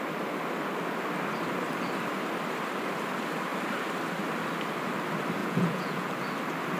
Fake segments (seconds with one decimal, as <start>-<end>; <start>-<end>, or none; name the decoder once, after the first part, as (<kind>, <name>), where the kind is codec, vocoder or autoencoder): 5.4-6.1 (vocoder, Vocos)